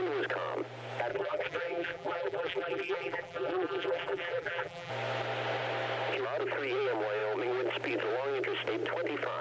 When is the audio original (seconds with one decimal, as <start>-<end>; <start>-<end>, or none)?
0.0-1.1; 4.9-9.4